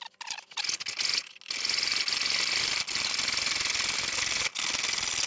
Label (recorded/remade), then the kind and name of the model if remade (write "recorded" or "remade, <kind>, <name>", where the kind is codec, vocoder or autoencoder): recorded